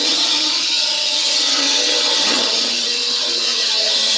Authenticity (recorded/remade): remade